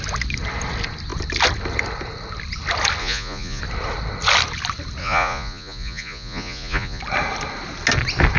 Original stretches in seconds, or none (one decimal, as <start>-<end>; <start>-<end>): 0.0-3.0; 3.6-5.0; 7.0-8.4